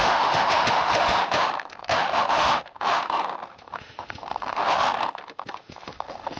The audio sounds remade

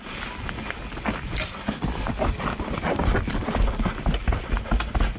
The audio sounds recorded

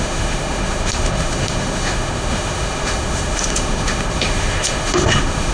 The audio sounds remade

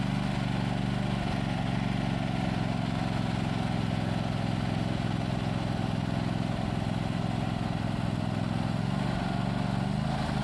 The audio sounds recorded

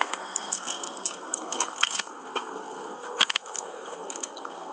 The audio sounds remade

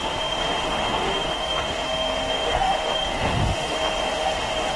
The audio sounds remade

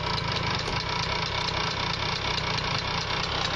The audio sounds recorded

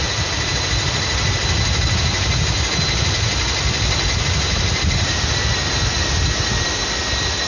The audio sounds recorded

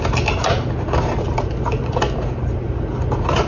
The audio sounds recorded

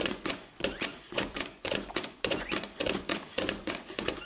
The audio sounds remade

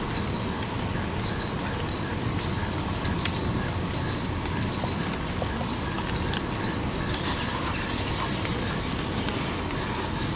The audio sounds recorded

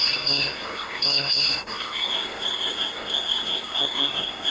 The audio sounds remade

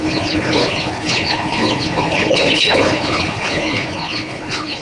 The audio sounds remade